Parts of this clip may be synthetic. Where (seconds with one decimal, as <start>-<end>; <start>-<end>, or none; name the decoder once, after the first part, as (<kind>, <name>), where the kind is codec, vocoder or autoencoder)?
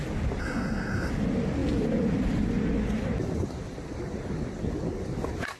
0.4-1.1 (codec, SNAC)